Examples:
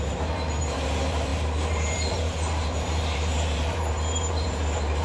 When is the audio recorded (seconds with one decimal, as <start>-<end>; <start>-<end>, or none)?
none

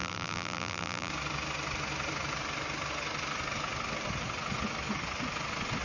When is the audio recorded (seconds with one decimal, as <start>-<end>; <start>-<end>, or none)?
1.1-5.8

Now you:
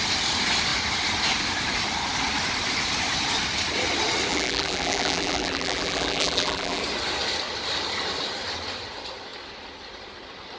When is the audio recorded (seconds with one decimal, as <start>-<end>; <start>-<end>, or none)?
0.0-4.3; 6.8-10.6